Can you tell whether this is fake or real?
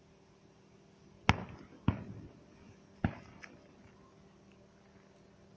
real